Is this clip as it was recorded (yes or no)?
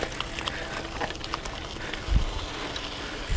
yes